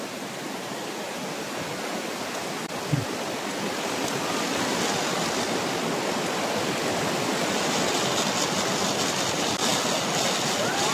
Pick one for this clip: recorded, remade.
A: recorded